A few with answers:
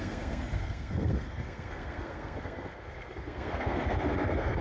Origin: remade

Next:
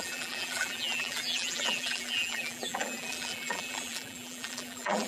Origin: remade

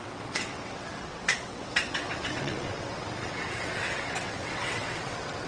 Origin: remade